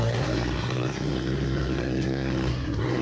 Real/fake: fake